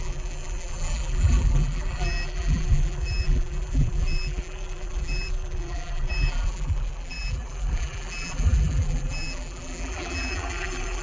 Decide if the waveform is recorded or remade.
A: remade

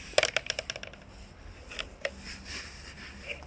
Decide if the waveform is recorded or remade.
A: recorded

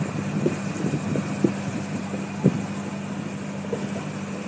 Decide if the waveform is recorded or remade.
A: recorded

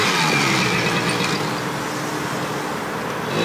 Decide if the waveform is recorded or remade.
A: recorded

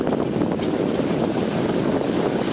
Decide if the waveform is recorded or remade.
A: recorded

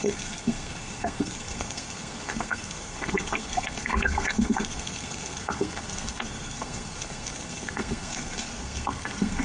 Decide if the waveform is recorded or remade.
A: remade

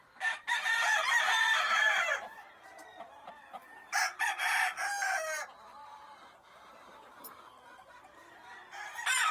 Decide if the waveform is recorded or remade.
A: remade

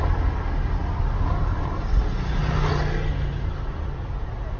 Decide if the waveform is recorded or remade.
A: recorded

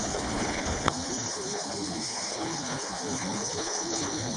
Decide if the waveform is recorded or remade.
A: remade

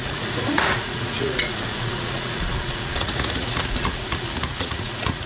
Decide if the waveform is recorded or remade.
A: remade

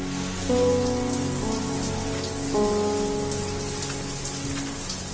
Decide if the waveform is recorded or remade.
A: recorded